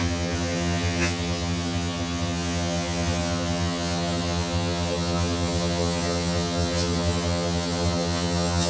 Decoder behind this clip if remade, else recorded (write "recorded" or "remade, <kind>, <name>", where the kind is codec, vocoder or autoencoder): remade, vocoder, HiFi-GAN